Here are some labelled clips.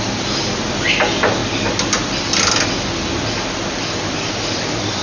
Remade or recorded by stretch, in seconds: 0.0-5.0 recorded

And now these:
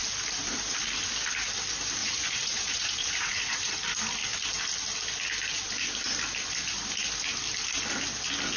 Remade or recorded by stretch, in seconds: 0.0-2.0 recorded; 2.0-3.7 remade; 3.7-8.6 recorded

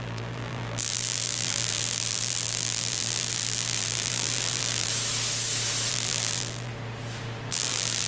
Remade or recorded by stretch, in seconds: 0.0-4.9 remade; 4.9-5.9 recorded; 5.9-6.7 remade; 6.7-7.5 recorded; 7.5-8.1 remade

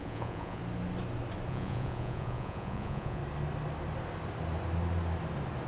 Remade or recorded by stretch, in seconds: 0.0-0.6 remade; 0.6-1.5 recorded; 1.5-3.2 remade; 3.2-5.7 recorded

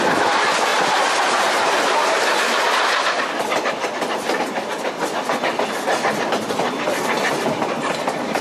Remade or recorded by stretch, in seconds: 0.0-8.4 recorded

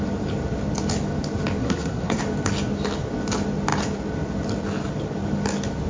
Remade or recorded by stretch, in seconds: 0.0-1.6 recorded; 1.6-2.2 remade; 2.2-5.9 recorded

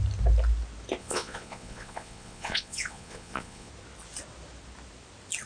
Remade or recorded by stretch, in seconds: 0.0-1.0 recorded; 1.0-3.7 remade; 3.7-5.5 recorded